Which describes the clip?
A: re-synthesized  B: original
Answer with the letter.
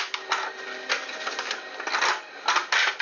B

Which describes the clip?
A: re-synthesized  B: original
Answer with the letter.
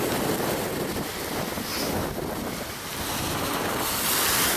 B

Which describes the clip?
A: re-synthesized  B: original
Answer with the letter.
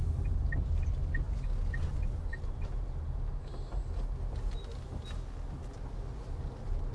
B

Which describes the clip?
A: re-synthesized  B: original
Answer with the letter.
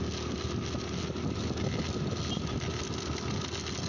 B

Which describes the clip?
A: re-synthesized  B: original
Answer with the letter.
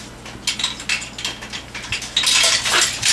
B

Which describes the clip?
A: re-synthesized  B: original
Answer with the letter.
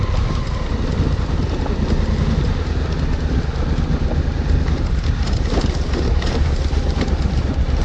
B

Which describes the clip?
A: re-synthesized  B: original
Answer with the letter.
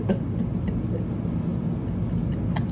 B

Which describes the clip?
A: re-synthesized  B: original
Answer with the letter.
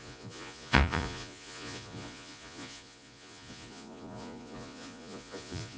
A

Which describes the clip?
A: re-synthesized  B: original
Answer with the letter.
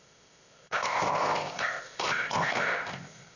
A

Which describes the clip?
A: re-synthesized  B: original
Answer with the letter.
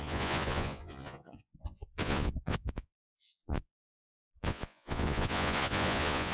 A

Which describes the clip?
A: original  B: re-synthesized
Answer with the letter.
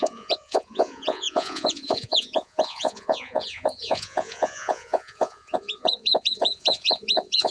B